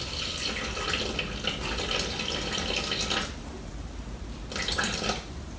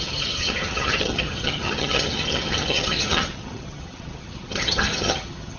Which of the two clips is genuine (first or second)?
first